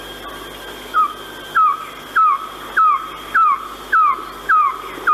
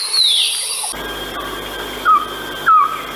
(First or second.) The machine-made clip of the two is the second